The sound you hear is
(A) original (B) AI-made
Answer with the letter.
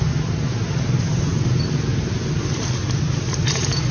A